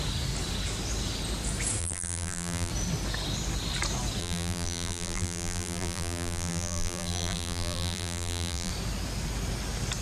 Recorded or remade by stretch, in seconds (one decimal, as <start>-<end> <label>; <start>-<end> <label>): 0.0-1.8 recorded; 1.8-2.7 remade; 2.7-4.2 recorded; 4.2-8.7 remade; 8.7-10.0 recorded